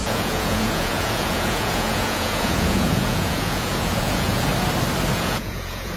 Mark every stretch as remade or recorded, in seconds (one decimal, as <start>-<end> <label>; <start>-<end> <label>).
0.0-4.5 remade; 4.5-5.1 recorded; 5.1-6.0 remade

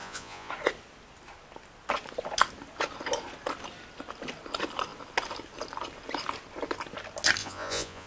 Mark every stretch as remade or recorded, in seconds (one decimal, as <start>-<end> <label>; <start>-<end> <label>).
0.0-0.5 remade; 0.5-7.4 recorded; 7.4-8.1 remade

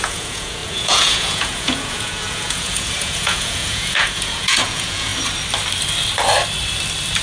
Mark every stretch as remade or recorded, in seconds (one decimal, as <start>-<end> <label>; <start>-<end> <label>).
0.0-5.1 remade; 5.1-7.2 recorded

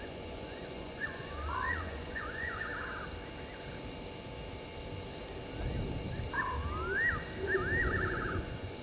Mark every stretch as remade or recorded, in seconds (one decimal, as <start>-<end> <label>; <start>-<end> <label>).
0.0-2.7 remade; 2.7-7.8 recorded; 7.8-8.8 remade

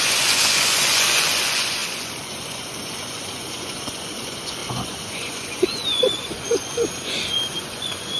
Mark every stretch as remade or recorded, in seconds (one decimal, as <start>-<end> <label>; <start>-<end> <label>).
0.0-8.2 remade

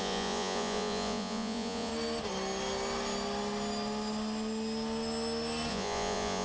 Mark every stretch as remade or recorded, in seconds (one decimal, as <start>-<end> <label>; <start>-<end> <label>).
0.0-1.9 remade; 1.9-5.7 recorded; 5.7-6.4 remade

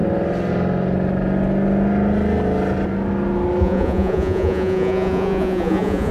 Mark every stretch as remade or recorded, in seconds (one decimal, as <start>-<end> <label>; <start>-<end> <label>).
0.0-3.6 recorded; 3.6-6.1 remade

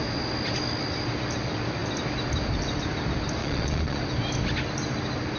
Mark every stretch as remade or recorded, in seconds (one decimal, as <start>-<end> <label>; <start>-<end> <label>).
0.0-3.4 recorded; 3.4-4.0 remade; 4.0-5.4 recorded